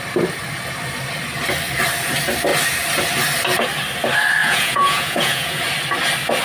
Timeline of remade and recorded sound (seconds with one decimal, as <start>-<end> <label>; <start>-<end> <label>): 0.0-4.4 recorded; 4.4-5.6 remade; 5.6-6.4 recorded